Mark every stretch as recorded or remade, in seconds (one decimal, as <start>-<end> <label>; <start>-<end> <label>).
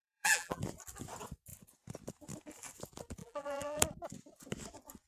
0.0-0.6 remade; 0.6-3.2 recorded; 3.2-3.8 remade; 3.8-5.1 recorded